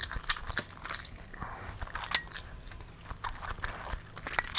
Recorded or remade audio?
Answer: recorded